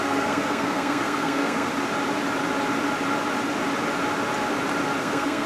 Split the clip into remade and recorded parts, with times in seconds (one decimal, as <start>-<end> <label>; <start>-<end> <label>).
0.0-1.7 remade; 1.7-5.0 recorded; 5.0-5.5 remade